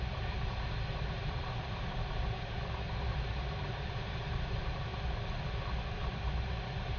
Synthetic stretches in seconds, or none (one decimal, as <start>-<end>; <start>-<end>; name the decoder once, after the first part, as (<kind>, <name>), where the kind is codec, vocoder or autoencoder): 0.0-4.9 (vocoder, BigVGAN v2); 5.9-7.0